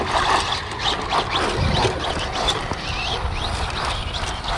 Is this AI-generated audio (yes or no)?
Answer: no